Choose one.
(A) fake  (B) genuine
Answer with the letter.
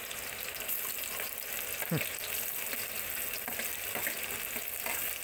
B